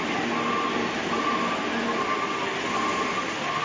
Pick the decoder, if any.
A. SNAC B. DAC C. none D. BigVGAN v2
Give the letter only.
C